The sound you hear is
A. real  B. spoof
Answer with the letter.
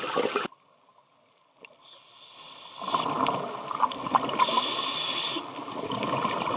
A